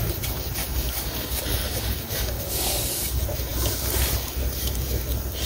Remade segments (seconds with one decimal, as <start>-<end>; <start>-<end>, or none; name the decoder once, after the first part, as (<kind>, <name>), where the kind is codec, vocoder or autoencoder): 0.6-3.1 (codec, DAC)